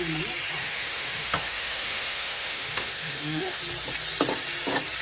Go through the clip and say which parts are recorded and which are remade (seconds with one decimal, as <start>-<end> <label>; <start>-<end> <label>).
0.0-0.6 recorded; 0.6-3.6 remade; 3.6-5.0 recorded